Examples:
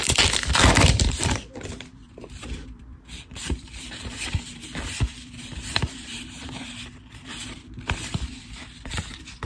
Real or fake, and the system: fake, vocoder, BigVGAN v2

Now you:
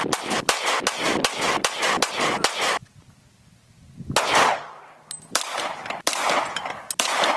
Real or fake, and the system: real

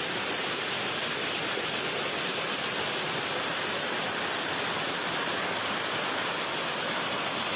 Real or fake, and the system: real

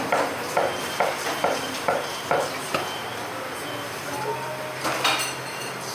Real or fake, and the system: real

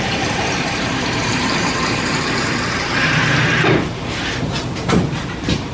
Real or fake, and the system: fake, vocoder, BigVGAN v2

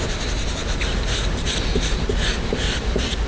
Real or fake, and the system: real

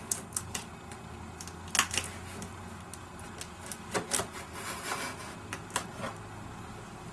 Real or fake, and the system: real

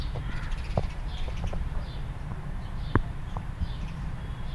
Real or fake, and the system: fake, vocoder, BigVGAN v2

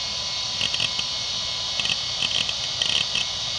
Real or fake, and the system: real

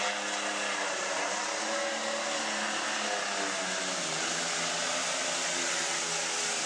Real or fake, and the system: real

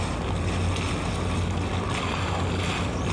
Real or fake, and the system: real